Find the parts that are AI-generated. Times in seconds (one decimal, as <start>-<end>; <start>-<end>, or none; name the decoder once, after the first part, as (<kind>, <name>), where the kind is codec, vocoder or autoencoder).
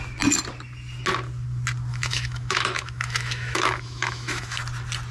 1.9-4.6 (autoencoder, DAC-VAE)